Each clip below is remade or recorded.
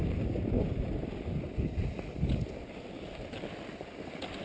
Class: recorded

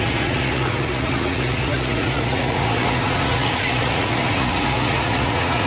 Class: remade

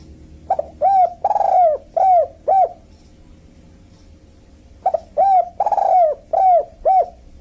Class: recorded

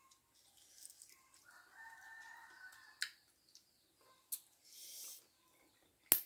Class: recorded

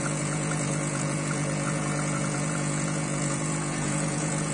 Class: remade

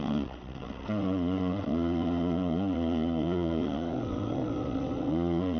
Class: remade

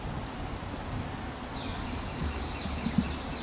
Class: recorded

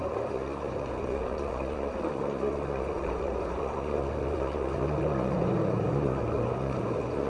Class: remade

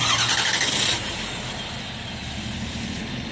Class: recorded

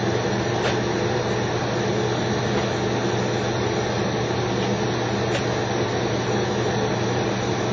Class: recorded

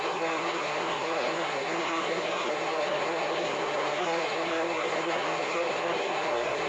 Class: remade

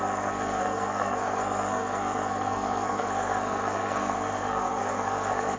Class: remade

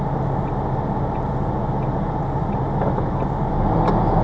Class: recorded